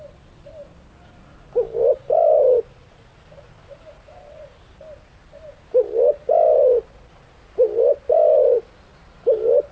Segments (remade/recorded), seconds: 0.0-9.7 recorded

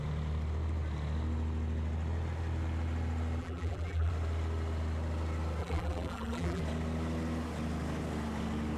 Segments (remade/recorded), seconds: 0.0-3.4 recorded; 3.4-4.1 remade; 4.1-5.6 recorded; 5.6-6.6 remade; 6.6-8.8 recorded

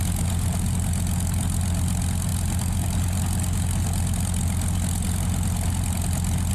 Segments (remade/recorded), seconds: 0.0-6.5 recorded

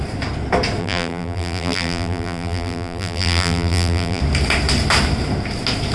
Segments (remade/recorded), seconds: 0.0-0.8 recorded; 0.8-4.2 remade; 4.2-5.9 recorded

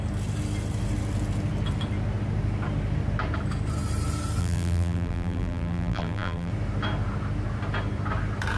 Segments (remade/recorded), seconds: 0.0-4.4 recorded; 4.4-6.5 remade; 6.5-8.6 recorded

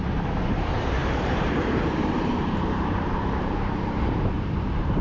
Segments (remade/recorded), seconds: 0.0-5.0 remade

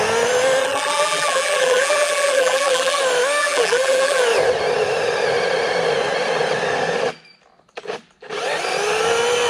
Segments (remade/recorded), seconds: 0.0-0.6 recorded; 0.6-3.0 remade; 3.0-3.4 recorded; 3.4-4.2 remade; 4.2-9.5 recorded